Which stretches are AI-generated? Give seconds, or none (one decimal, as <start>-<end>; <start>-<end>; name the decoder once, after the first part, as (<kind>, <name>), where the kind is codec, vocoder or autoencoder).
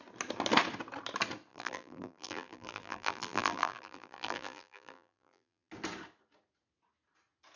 1.5-5.7 (vocoder, BigVGAN v2)